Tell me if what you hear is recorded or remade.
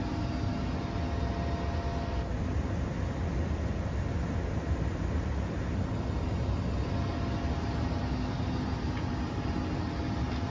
recorded